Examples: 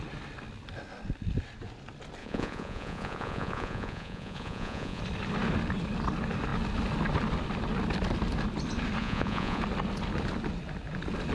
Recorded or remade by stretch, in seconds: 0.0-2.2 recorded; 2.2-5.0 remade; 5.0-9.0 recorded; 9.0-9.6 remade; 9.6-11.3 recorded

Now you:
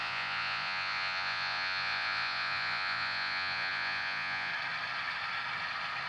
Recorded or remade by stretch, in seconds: 0.0-4.5 remade; 4.5-6.1 recorded

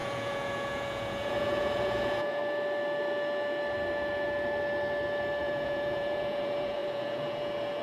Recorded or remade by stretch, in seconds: 0.0-2.4 remade; 2.4-5.4 recorded; 5.4-7.8 remade

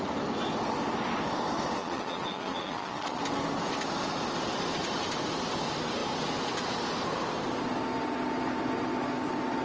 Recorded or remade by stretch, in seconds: 0.0-1.8 recorded; 1.8-3.2 remade; 3.2-9.6 recorded

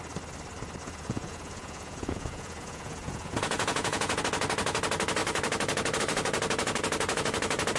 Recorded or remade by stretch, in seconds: 0.0-0.8 recorded; 0.8-4.2 remade; 4.2-7.8 recorded

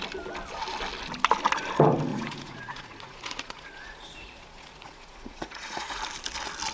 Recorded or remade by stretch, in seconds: 0.0-2.1 recorded; 2.1-6.0 remade; 6.0-6.7 recorded